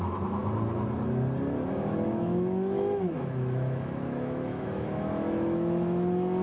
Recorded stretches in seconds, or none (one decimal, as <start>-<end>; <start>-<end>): 0.4-1.7